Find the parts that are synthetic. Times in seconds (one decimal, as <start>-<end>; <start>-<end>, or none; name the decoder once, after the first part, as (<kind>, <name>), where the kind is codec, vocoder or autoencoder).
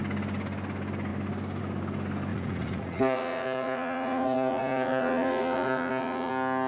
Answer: 2.3-6.3 (vocoder, Vocos)